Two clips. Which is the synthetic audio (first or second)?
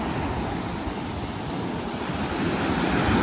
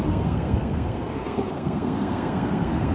second